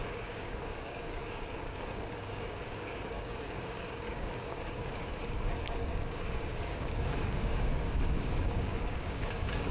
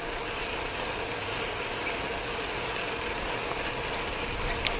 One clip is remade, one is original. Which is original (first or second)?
second